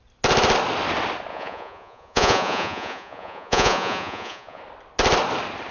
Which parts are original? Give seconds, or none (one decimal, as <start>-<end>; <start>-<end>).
0.0-1.3; 4.6-5.7